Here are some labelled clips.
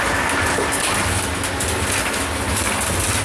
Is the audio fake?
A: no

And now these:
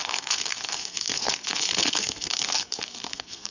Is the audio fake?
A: yes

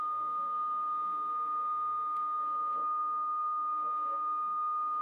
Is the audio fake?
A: yes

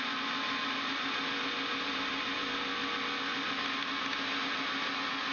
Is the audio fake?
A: no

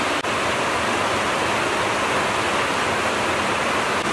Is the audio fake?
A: no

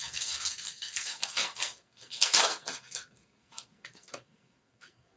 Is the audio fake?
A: yes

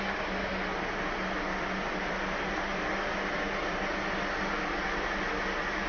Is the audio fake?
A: no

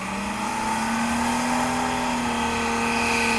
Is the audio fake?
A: no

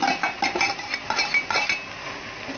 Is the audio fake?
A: no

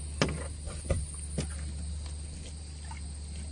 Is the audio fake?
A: no